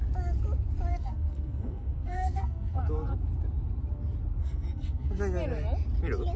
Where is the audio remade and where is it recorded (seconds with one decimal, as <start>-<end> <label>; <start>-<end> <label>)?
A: 0.0-0.9 recorded; 0.9-2.8 remade; 2.8-4.4 recorded; 4.4-5.2 remade; 5.2-6.4 recorded